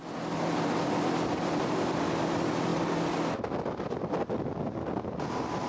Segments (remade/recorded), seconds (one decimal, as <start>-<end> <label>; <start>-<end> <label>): 0.0-5.7 recorded

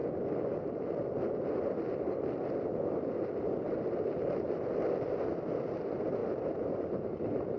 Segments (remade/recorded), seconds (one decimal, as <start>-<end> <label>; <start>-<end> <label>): 0.0-6.2 recorded; 6.2-7.6 remade

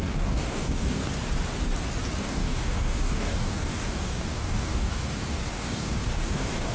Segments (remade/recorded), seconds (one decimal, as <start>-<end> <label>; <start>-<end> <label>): 0.0-1.0 remade; 1.0-2.2 recorded; 2.2-6.7 remade

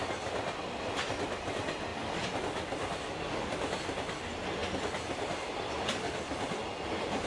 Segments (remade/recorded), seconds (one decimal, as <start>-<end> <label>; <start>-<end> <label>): 0.0-7.3 recorded

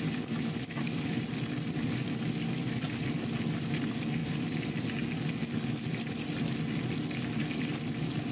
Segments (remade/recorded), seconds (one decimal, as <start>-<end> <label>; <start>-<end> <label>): 0.0-8.3 recorded

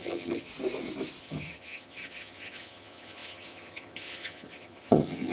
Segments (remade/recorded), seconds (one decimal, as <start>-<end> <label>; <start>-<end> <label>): 0.0-0.5 remade; 0.5-1.2 recorded; 1.2-5.3 remade